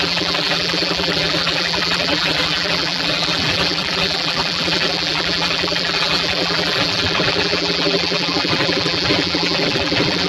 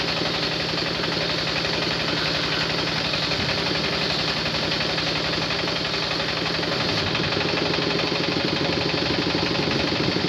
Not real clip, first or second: first